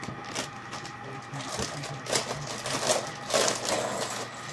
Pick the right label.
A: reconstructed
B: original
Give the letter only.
B